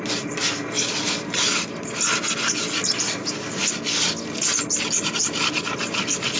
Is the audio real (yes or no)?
yes